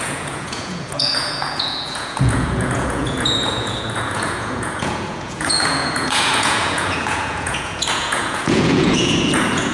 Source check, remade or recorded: remade